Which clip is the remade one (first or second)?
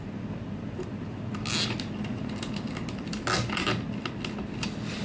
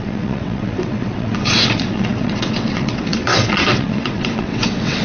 second